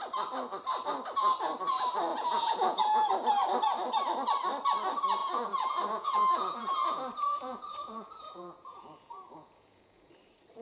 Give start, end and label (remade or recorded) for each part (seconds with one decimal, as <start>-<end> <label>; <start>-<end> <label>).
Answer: 0.0-2.1 recorded; 2.1-3.1 remade; 3.1-5.2 recorded; 5.2-10.1 remade; 10.1-10.6 recorded